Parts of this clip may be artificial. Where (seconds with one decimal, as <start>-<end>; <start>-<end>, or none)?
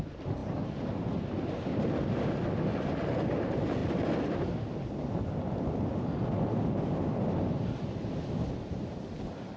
none